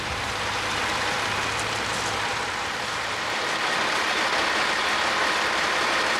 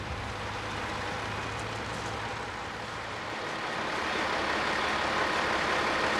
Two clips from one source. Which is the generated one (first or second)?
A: first